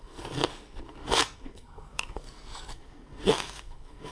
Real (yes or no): no